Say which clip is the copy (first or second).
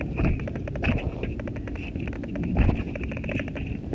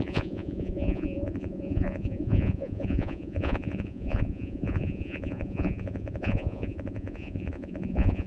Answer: second